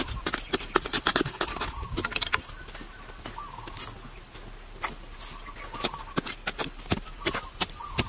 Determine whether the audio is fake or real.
real